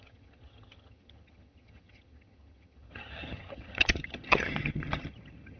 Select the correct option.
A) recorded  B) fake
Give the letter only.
B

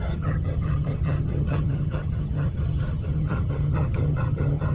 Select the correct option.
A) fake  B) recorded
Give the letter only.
A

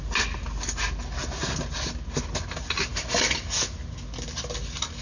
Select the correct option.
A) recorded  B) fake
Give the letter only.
A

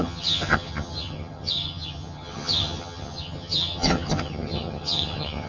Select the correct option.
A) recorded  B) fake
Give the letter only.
B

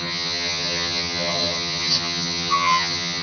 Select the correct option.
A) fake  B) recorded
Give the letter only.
A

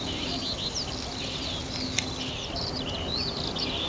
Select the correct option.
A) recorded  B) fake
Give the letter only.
A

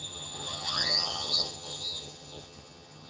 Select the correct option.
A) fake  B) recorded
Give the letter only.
A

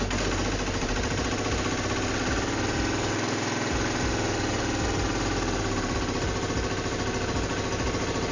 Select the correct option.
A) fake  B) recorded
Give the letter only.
B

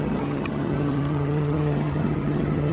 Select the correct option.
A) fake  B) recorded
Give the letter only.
A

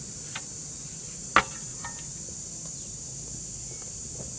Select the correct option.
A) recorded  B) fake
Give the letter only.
A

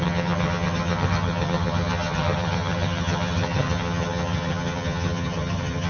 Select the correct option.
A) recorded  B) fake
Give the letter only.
B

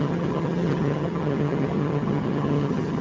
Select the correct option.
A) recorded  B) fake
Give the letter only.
B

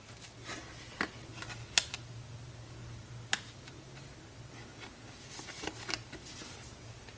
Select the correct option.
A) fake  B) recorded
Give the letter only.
B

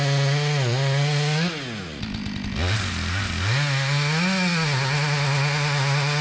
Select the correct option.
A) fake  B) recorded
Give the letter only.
B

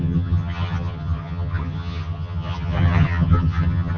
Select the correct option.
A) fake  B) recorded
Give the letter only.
A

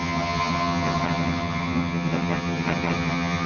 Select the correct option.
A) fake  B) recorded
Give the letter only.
A